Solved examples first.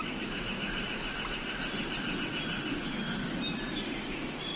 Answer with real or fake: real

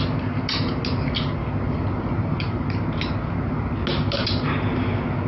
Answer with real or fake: real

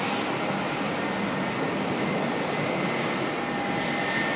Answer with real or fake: real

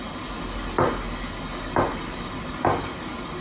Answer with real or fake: real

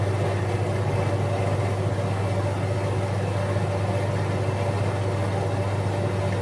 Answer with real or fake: real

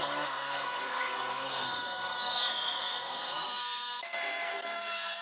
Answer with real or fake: fake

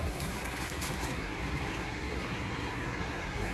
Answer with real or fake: fake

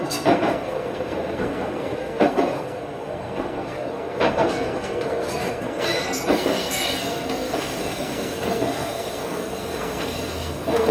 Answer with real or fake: fake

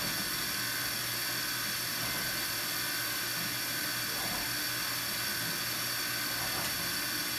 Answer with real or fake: real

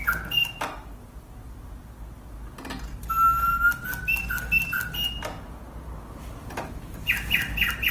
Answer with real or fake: real